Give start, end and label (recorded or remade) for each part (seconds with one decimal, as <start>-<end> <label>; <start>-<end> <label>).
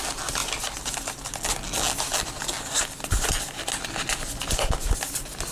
0.0-5.5 recorded